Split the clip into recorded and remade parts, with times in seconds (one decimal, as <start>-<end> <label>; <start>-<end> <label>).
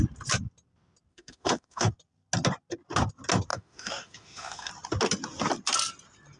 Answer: 0.0-1.1 recorded; 1.1-1.9 remade; 1.9-3.5 recorded; 3.5-4.7 remade; 4.7-6.4 recorded